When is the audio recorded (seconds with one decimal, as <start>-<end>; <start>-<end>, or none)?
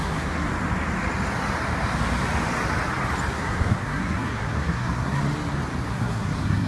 0.5-3.3; 5.2-5.9